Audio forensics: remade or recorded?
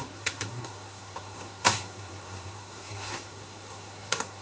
remade